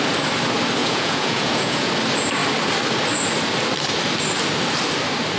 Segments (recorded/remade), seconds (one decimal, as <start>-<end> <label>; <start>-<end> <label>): 0.0-0.8 recorded; 0.8-1.9 remade; 1.9-5.4 recorded